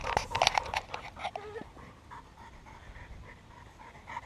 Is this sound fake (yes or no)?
no